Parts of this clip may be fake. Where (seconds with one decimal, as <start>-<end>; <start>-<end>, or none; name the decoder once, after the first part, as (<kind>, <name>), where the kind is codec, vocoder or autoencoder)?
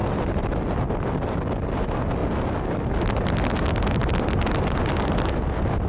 none